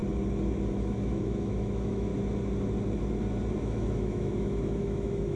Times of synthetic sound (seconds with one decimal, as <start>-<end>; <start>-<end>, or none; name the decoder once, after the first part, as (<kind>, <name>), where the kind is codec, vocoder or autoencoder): 0.7-2.1 (autoencoder, DAC-VAE); 3.6-5.4